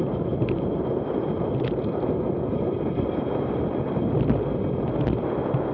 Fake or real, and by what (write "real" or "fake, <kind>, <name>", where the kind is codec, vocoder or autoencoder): real